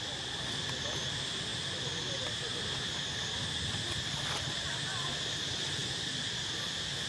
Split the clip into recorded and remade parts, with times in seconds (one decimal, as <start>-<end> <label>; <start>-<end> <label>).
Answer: 0.0-7.1 recorded